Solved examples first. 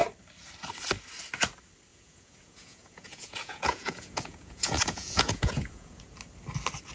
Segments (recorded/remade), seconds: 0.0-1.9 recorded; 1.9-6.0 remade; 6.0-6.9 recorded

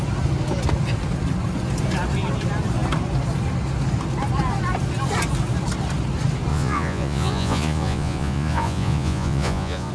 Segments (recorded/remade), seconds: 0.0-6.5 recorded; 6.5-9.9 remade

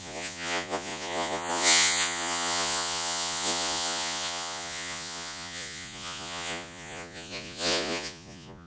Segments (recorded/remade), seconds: 0.0-8.7 remade